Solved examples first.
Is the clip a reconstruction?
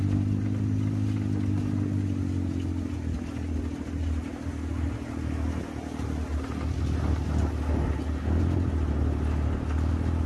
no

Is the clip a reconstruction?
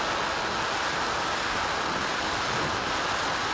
no